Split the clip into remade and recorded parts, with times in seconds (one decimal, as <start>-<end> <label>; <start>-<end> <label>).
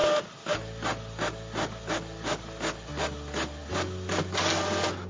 0.0-5.1 recorded